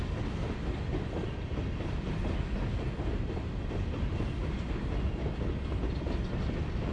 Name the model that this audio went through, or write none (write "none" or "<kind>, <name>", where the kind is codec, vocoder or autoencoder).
none